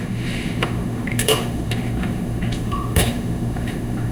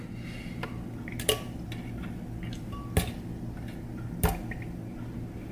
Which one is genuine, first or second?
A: second